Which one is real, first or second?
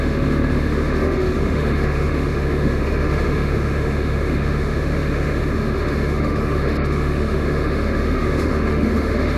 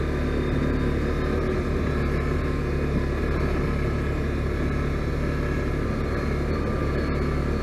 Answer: second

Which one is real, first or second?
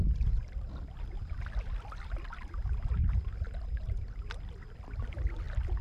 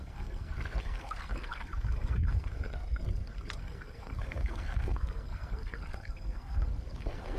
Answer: first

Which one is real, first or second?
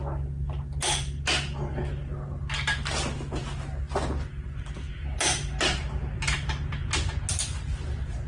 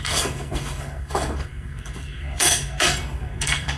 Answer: first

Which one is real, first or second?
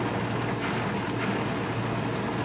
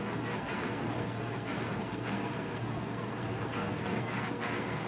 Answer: first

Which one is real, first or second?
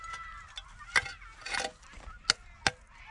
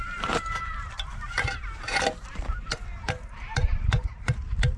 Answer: first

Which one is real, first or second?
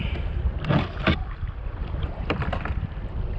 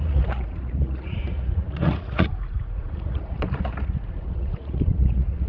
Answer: first